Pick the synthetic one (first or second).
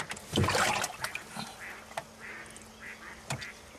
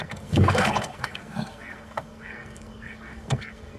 second